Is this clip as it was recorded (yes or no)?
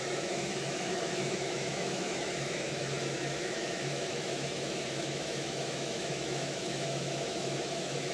no